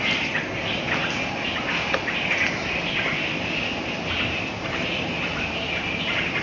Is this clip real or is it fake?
real